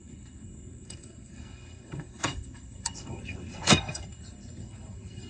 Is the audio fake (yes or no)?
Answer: yes